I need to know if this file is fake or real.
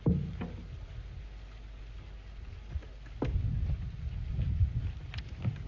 real